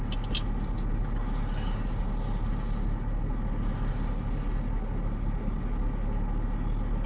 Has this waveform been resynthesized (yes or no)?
no